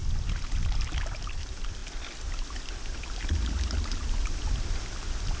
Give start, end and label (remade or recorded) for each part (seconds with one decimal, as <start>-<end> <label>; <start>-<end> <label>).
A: 0.0-5.4 recorded